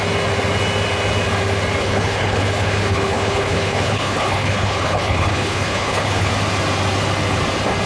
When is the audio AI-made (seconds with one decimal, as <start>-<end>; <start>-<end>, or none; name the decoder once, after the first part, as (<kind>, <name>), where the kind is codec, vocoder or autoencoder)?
1.8-6.3 (codec, HILCodec)